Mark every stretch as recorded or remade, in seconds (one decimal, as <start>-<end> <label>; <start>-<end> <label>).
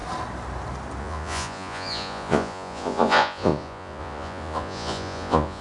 0.0-1.0 recorded; 1.0-5.6 remade